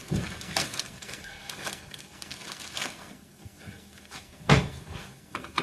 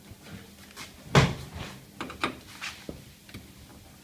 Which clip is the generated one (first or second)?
first